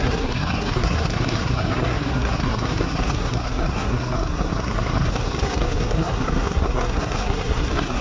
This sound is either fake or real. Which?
fake